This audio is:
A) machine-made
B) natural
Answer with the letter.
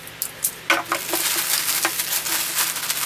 B